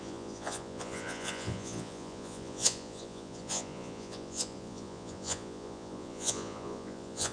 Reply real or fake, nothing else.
fake